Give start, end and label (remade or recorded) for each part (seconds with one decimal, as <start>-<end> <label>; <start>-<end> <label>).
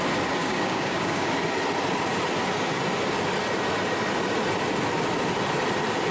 0.0-0.4 recorded; 0.4-1.3 remade; 1.3-6.1 recorded